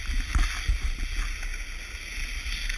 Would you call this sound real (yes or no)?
yes